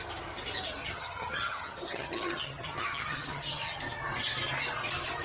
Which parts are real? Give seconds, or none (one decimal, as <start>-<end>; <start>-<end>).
0.0-0.8; 3.8-5.2